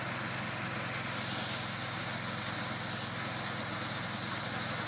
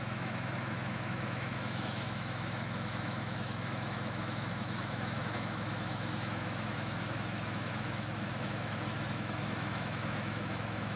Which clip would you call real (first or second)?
first